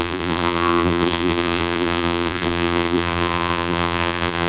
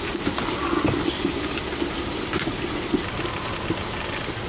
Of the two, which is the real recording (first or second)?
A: second